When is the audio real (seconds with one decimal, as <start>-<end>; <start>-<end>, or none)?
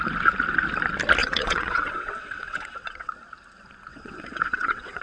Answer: 0.0-1.2; 3.1-3.9